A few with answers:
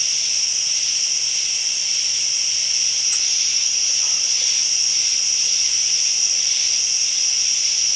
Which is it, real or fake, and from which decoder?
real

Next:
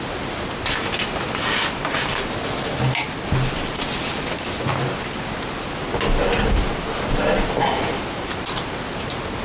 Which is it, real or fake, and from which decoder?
real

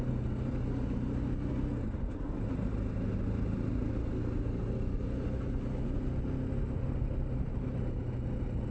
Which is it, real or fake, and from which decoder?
real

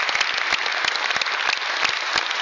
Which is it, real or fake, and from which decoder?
real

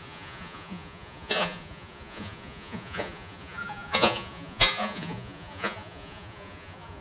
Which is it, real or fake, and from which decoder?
fake, vocoder, Vocos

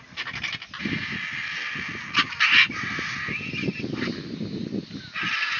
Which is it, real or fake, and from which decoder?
real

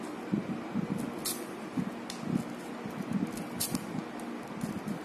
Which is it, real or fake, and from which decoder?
real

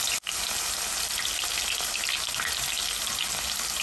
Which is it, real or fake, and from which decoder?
real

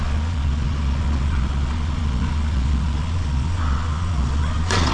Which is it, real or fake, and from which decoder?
fake, vocoder, Vocos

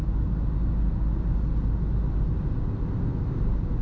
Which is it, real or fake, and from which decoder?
real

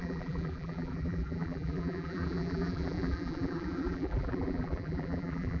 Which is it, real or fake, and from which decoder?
fake, vocoder, BigVGAN v2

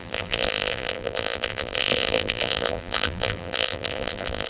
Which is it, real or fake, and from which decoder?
fake, vocoder, BigVGAN v2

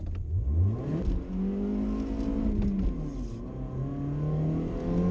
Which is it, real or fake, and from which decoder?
real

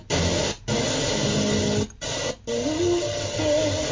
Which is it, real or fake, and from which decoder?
real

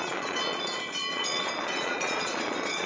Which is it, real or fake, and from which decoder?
fake, vocoder, Vocos